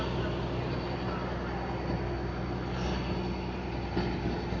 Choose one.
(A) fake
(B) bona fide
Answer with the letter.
B